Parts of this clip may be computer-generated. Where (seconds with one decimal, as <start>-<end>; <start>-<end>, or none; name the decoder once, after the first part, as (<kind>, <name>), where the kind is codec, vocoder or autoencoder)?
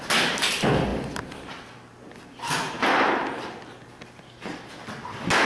none